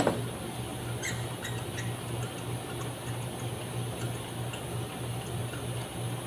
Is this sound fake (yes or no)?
no